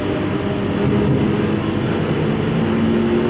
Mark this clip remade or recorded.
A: recorded